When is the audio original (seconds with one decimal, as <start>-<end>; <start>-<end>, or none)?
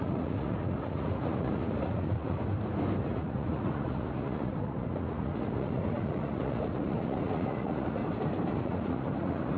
2.4-3.0; 8.0-8.5